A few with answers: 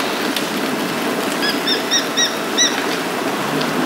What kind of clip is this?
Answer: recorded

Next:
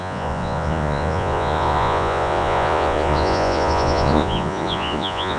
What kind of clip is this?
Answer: remade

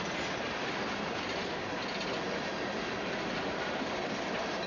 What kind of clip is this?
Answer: recorded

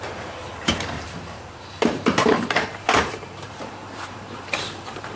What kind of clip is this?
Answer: remade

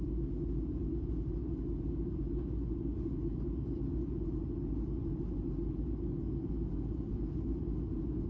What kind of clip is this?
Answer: recorded